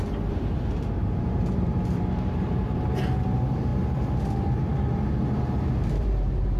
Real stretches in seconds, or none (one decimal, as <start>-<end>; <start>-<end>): 3.7-4.2